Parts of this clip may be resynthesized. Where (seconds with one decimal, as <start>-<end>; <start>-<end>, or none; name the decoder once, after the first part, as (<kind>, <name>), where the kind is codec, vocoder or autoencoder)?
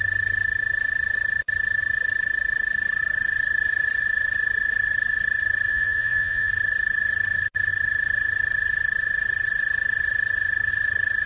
5.7-6.5 (vocoder, Vocos)